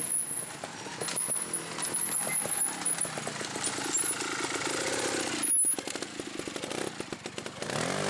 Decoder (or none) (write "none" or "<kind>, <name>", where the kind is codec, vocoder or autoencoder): none